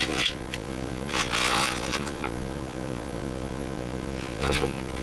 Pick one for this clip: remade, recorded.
remade